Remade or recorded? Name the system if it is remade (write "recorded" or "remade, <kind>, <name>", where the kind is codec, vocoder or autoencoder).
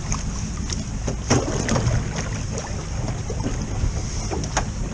recorded